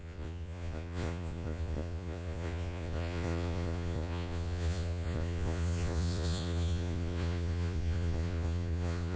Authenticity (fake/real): fake